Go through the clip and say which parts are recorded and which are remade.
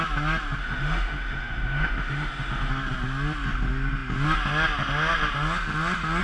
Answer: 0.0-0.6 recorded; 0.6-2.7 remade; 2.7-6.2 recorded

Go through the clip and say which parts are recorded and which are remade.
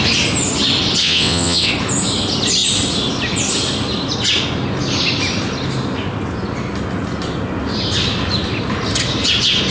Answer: 0.0-1.0 recorded; 1.0-1.7 remade; 1.7-9.7 recorded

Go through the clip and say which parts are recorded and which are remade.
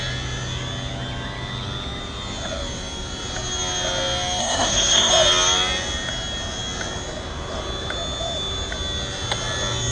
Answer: 0.0-4.4 recorded; 4.4-5.1 remade; 5.1-9.9 recorded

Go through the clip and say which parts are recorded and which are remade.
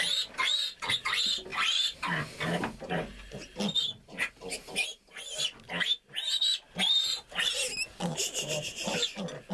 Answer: 0.0-1.5 recorded; 1.5-2.0 remade; 2.0-9.5 recorded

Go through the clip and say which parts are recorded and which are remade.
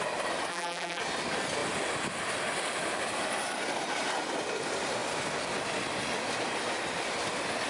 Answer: 0.0-0.5 recorded; 0.5-1.0 remade; 1.0-7.7 recorded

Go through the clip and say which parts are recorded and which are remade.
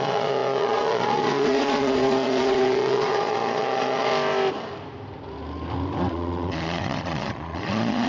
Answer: 0.0-4.1 remade; 4.1-6.0 recorded; 6.0-8.1 remade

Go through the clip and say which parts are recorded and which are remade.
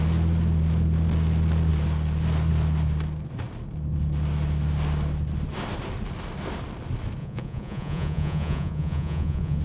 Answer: 0.0-7.2 recorded; 7.2-9.6 remade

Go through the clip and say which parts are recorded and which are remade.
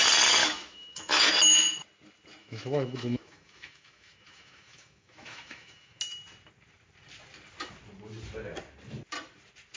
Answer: 0.0-0.4 recorded; 0.4-1.3 remade; 1.3-2.4 recorded; 2.4-6.0 remade; 6.0-9.8 recorded